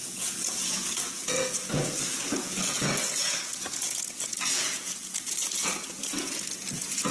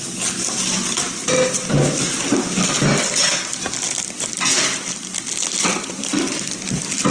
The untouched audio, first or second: second